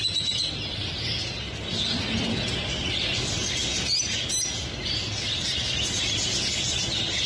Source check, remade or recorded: recorded